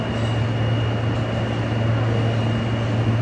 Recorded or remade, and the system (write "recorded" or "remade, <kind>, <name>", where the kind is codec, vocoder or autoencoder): recorded